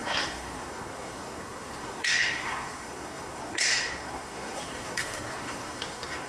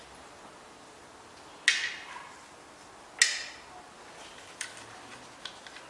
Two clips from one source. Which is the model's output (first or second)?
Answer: first